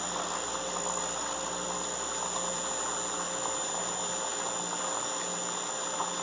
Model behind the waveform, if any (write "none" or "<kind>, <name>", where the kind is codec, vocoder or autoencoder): none